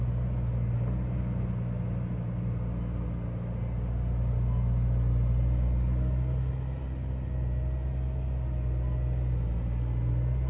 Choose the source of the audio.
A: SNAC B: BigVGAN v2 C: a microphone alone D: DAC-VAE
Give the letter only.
C